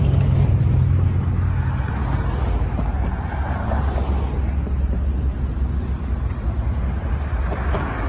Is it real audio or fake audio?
real